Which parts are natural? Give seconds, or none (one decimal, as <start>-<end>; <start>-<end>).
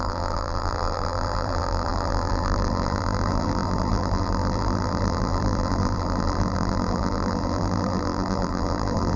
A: none